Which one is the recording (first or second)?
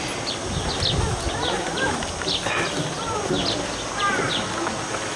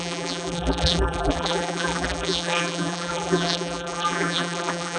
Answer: first